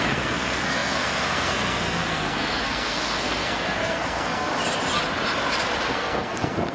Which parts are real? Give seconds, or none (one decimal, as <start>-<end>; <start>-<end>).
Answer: 4.5-5.9